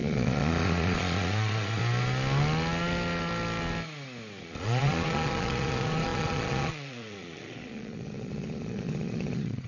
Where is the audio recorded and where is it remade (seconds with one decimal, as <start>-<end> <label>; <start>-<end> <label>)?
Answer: 0.0-1.8 remade; 1.8-4.4 recorded; 4.4-9.7 remade